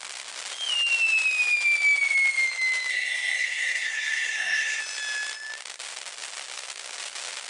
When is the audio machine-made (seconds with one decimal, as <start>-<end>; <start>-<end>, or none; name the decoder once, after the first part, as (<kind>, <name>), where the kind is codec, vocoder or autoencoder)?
2.9-4.8 (codec, SNAC)